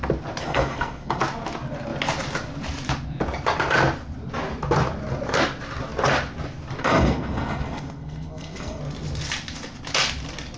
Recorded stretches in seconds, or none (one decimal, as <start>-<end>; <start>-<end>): 0.0-0.4; 1.2-6.8; 8.8-10.6